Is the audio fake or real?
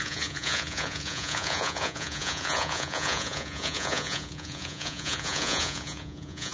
fake